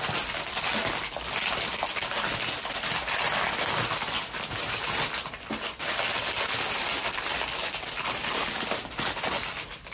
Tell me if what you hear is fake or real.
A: real